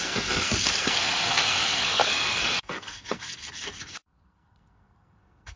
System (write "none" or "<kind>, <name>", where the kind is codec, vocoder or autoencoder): codec, SNAC